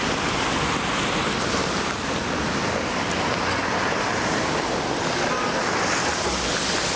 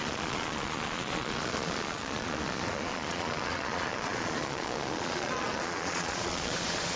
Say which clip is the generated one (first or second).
second